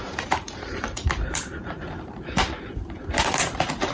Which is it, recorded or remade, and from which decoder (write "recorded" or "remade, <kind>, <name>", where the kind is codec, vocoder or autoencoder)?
remade, vocoder, BigVGAN v2